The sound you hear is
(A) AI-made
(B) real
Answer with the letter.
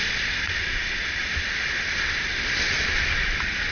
B